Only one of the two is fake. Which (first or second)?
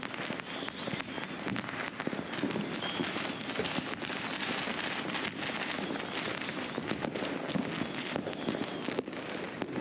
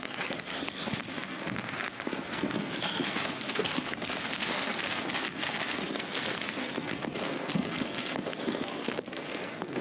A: second